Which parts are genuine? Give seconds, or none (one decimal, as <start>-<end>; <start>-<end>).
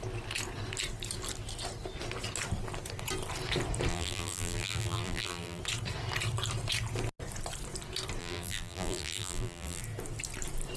0.0-3.9; 5.6-8.2; 9.8-10.8